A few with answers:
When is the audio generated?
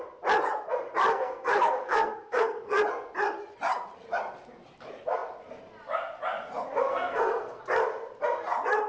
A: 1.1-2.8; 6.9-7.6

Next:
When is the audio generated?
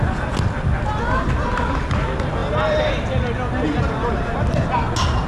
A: 2.4-2.9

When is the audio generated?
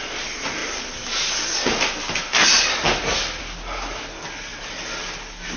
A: 4.5-5.0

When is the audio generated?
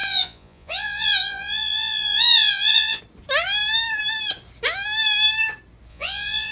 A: 0.0-3.0; 5.9-6.5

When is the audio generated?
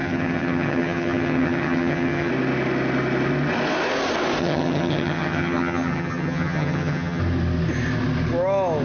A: 0.0-2.3; 4.4-7.2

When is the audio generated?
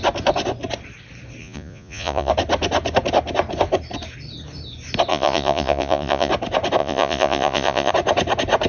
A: 1.4-2.3; 5.1-6.3; 6.8-7.9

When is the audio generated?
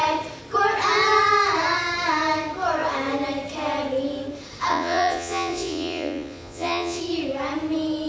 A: 4.7-7.0